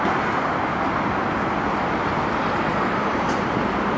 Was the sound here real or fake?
real